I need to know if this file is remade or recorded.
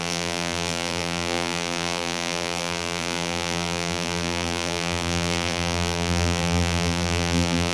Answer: remade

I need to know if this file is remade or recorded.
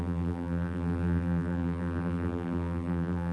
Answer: remade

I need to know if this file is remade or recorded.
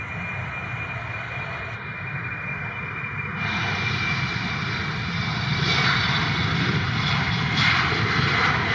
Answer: recorded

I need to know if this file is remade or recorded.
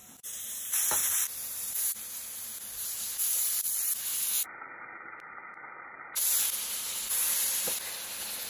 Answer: recorded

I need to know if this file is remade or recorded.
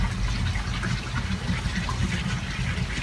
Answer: recorded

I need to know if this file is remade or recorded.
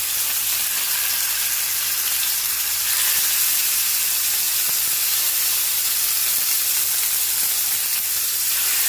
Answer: remade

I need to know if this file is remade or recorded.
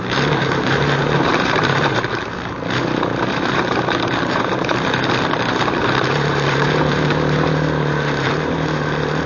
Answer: remade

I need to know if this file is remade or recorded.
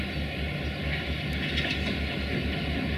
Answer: recorded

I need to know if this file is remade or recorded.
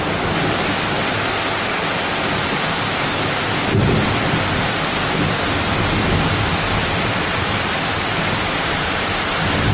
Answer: recorded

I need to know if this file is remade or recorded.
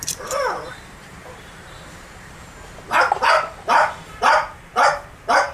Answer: remade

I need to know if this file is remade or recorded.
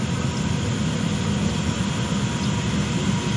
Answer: recorded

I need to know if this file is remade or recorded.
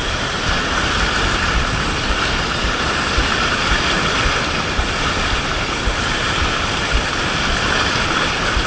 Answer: remade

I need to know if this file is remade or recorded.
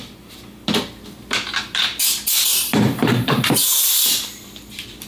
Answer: remade